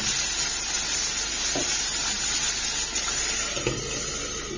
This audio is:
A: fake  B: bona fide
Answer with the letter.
B